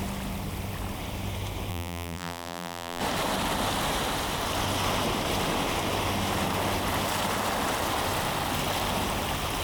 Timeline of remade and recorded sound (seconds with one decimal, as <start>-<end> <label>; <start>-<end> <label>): 0.0-1.7 recorded; 1.7-3.0 remade; 3.0-9.6 recorded